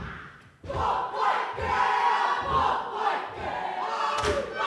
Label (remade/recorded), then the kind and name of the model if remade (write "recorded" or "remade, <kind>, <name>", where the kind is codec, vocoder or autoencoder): recorded